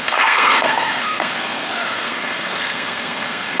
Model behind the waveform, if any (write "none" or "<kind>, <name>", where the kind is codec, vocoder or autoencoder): codec, SNAC